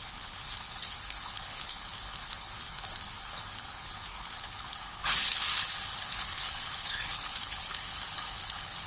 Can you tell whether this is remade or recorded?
remade